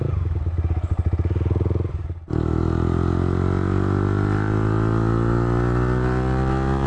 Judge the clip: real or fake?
real